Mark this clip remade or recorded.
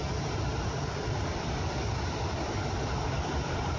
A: remade